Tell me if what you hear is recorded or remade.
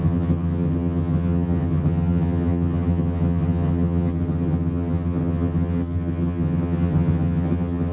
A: remade